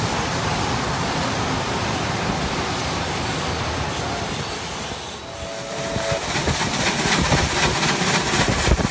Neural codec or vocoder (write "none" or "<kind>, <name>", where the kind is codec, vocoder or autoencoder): none